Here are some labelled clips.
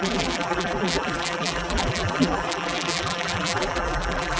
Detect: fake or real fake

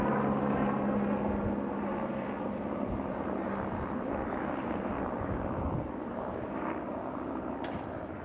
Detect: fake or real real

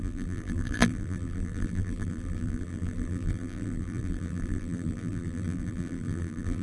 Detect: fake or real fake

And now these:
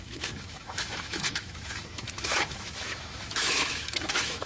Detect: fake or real fake